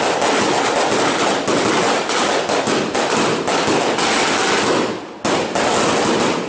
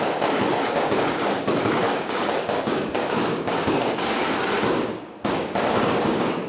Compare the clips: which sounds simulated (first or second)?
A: second